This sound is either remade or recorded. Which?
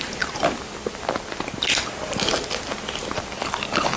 recorded